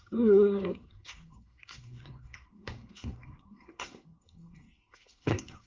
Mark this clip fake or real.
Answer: fake